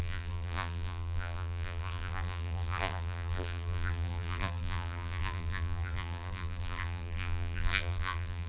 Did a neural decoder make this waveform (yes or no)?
yes